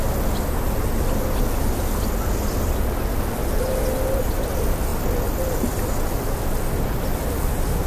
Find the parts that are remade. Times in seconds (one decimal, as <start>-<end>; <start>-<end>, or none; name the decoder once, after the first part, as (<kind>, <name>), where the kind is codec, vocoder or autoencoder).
none